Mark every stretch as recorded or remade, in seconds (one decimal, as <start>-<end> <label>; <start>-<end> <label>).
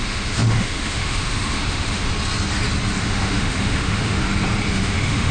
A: 0.0-2.1 remade; 2.1-3.0 recorded; 3.0-4.2 remade; 4.2-4.7 recorded; 4.7-5.3 remade